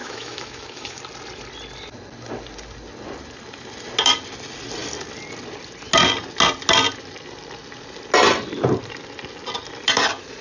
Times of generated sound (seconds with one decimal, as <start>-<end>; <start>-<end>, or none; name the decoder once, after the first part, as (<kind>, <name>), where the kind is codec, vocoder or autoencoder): 0.0-1.0 (autoencoder, DAC-VAE)